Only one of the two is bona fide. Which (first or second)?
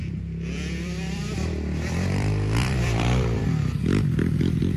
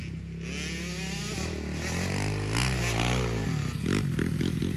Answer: second